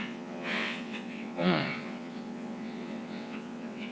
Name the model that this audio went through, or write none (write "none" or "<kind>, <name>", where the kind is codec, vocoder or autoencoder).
vocoder, WaveNeXt